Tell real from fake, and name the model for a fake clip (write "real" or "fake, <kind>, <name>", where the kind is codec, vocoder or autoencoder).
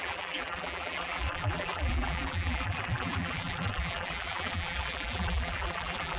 fake, vocoder, BigVGAN v2